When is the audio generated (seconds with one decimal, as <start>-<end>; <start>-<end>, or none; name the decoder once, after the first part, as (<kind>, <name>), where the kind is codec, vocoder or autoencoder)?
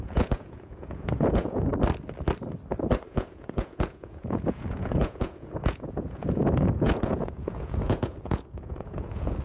0.0-1.7 (vocoder, Vocos); 3.1-9.4